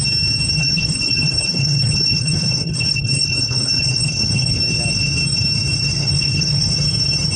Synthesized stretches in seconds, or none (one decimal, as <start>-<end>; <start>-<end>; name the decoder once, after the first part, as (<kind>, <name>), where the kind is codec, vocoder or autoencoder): 0.6-4.6 (codec, HILCodec); 6.0-6.7

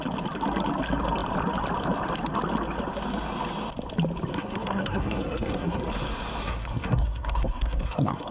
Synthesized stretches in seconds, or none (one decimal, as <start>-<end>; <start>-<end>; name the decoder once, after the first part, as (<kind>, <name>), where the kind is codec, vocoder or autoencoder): 4.3-5.8 (codec, SNAC); 6.4-8.3

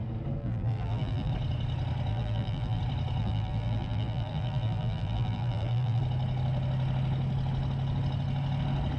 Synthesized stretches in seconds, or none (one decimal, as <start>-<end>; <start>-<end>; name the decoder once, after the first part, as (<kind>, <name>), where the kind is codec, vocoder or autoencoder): 0.4-1.3 (vocoder, BigVGAN v2); 2.1-2.8; 3.2-6.0